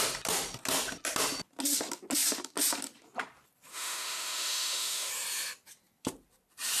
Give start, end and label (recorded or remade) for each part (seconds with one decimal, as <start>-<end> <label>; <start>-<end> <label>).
0.0-3.7 recorded; 3.7-5.1 remade; 5.1-6.8 recorded